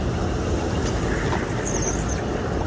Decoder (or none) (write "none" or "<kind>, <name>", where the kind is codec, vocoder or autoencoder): none